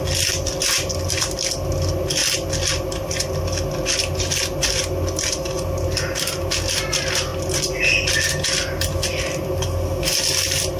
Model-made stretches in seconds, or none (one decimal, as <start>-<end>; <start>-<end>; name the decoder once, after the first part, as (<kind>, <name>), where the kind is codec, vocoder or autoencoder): none